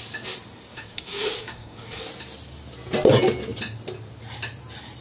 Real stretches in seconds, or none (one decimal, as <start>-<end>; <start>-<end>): 0.0-0.7; 2.0-5.0